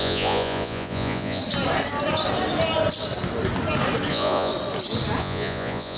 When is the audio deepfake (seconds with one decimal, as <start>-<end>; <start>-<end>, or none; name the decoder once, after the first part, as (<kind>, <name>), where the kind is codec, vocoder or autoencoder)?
0.0-1.4 (vocoder, Vocos); 4.1-4.5; 5.2-6.0